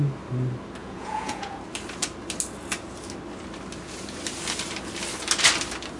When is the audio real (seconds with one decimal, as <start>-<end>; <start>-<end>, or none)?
0.0-0.8; 1.6-6.0